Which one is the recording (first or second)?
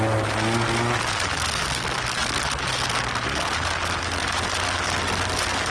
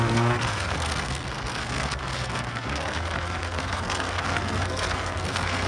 first